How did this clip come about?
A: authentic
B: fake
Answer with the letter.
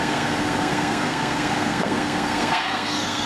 B